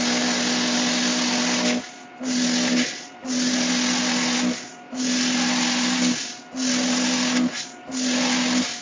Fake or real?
real